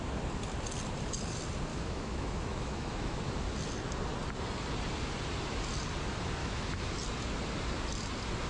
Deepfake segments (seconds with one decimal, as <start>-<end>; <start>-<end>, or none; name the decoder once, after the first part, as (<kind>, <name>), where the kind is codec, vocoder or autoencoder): 1.7-3.2 (autoencoder, DAC-VAE); 6.4-6.9

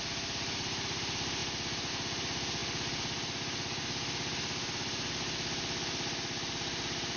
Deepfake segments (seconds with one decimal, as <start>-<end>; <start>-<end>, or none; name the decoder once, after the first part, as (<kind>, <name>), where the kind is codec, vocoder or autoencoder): none

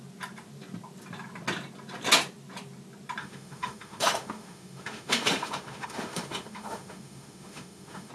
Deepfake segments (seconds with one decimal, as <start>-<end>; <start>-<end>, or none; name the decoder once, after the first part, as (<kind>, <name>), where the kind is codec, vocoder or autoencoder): 3.2-8.1 (autoencoder, DAC-VAE)

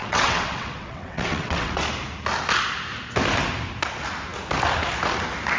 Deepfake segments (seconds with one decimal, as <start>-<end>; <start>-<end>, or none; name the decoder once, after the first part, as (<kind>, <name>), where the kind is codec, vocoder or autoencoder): 0.0-1.8 (vocoder, WaveNeXt)

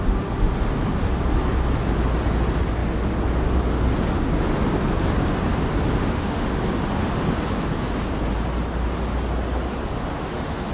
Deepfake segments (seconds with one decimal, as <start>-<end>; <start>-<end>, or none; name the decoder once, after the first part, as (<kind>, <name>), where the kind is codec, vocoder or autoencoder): 6.0-6.6 (autoencoder, DAC-VAE); 10.1-10.7